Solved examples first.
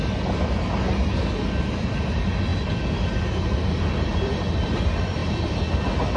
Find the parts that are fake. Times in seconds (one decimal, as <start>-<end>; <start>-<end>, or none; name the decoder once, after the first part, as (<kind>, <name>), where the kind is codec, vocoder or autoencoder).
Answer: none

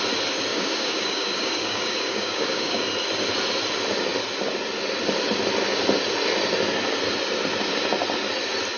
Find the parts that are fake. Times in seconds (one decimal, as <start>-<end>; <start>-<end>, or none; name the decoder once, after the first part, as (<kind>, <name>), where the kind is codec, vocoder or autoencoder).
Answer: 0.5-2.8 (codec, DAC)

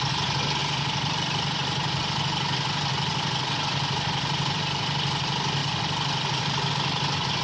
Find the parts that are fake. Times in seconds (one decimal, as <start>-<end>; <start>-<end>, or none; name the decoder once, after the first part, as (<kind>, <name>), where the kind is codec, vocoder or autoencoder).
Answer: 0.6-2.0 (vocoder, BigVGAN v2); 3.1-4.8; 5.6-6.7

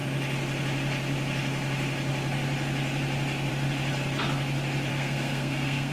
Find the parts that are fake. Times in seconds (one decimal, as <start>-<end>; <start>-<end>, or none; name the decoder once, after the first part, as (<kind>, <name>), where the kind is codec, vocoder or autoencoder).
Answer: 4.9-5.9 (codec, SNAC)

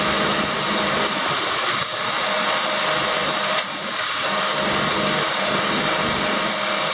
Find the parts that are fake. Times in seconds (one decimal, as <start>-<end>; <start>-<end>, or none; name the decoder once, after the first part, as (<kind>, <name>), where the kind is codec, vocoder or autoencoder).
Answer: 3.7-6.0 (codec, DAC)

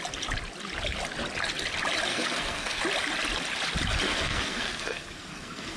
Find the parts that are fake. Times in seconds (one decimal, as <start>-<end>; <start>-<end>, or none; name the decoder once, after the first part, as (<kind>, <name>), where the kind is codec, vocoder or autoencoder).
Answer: 2.1-2.8 (codec, SNAC); 4.1-5.8

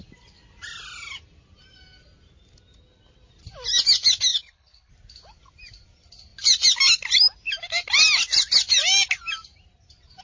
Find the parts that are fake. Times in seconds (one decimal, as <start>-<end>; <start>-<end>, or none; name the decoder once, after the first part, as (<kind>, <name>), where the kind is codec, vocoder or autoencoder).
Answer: 4.3-4.9 (codec, HILCodec)

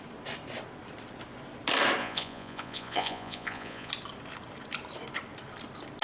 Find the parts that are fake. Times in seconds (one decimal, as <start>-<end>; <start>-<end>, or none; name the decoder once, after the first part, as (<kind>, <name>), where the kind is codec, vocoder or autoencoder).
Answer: 2.0-3.9 (vocoder, Vocos)